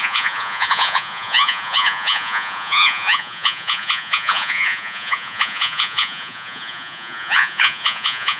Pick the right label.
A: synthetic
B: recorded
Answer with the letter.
A